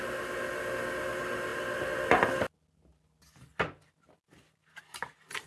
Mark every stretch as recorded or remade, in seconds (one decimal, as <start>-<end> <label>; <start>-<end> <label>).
0.0-5.5 recorded